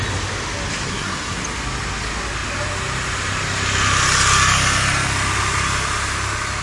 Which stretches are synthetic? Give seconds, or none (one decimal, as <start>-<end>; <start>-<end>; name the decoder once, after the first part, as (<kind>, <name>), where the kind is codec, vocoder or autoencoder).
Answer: 0.9-1.4 (codec, SNAC)